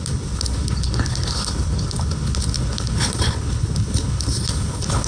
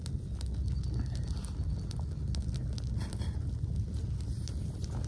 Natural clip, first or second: second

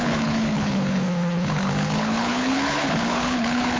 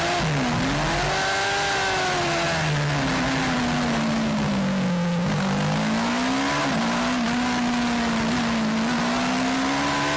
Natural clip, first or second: second